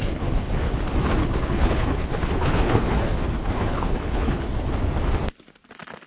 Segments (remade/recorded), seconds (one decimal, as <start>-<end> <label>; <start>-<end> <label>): 0.0-0.5 remade; 0.5-1.2 recorded; 1.2-4.7 remade; 4.7-6.1 recorded